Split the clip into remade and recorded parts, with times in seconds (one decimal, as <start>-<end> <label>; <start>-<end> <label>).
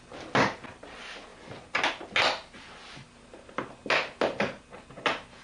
0.0-5.4 recorded